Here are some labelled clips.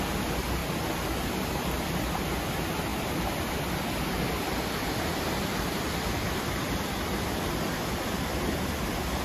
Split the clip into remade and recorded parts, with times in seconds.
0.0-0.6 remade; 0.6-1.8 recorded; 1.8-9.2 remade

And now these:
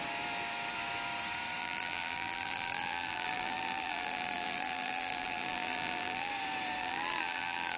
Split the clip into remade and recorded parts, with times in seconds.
0.0-1.6 recorded; 1.6-6.3 remade; 6.3-6.8 recorded; 6.8-7.8 remade

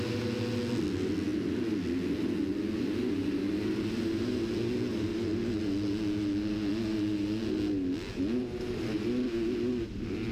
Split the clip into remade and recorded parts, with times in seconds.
0.0-4.9 recorded; 4.9-5.6 remade; 5.6-10.3 recorded

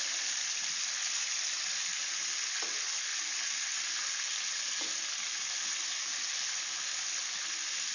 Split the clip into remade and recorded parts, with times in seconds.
0.0-3.1 recorded; 3.1-4.9 remade; 4.9-5.9 recorded; 5.9-6.6 remade; 6.6-7.9 recorded